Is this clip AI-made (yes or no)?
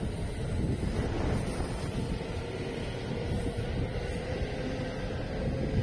no